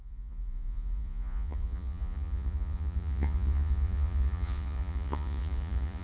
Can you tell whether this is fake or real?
fake